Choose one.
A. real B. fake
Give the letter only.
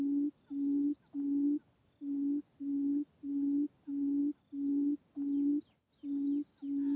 A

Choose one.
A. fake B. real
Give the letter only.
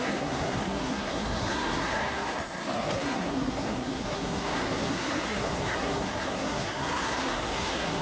A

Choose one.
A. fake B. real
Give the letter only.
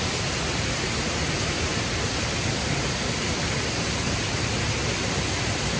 B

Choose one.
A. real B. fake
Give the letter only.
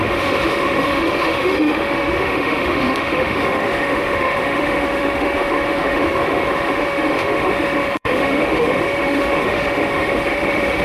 B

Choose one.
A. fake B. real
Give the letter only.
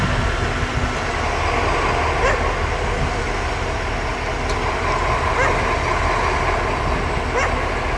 B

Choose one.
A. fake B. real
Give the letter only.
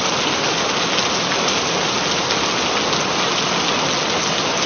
B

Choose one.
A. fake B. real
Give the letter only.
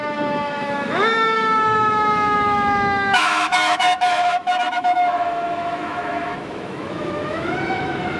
A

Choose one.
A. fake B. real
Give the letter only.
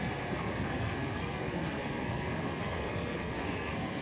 A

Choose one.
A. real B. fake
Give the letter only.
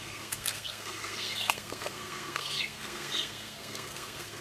B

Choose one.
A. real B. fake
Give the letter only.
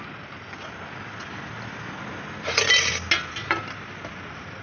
A